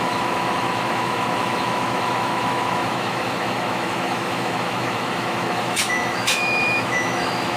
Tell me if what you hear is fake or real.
fake